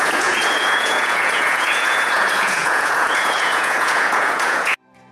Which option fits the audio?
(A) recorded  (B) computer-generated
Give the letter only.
B